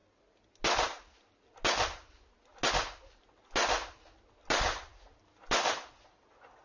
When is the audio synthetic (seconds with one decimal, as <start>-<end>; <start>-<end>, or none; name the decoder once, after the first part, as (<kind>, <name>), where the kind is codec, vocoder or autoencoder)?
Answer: none